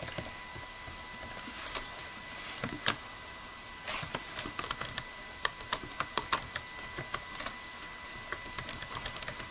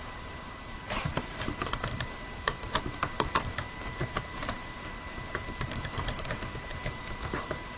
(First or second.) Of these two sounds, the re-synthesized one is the second